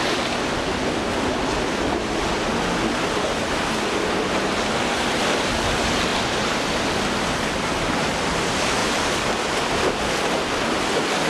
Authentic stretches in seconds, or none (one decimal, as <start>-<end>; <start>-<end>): 0.0-11.3